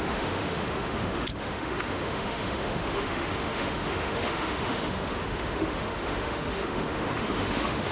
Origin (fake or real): fake